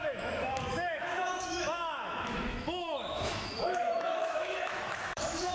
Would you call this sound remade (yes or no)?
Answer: yes